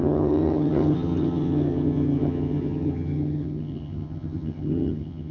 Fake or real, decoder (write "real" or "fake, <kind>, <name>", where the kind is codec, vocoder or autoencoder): fake, vocoder, HiFi-GAN